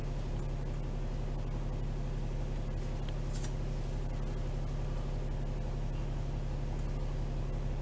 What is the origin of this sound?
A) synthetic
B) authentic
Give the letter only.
B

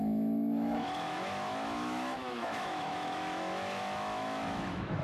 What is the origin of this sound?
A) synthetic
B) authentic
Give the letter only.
A